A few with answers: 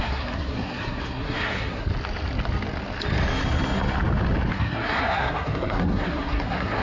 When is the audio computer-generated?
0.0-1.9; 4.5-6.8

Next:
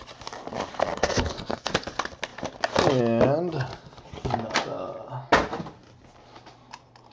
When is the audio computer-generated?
0.9-1.7

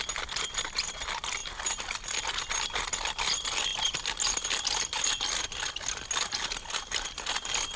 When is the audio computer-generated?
none

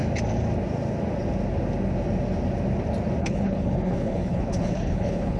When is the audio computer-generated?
3.2-5.4

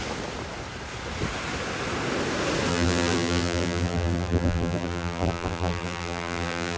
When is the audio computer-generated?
2.7-6.8

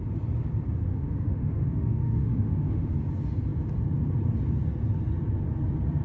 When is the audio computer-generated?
0.9-2.9

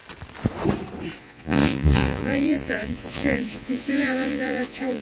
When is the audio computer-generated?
1.2-5.0

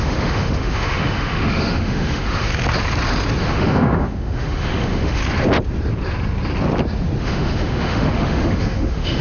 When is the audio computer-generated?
0.0-2.5; 3.4-5.2; 7.2-9.2